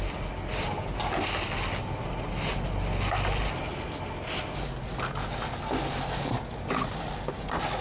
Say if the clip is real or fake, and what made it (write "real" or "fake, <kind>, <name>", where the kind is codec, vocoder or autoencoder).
real